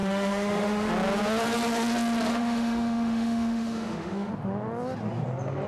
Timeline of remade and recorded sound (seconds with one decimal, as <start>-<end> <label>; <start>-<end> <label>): 0.0-0.9 remade; 0.9-2.3 recorded; 2.3-4.3 remade; 4.3-5.7 recorded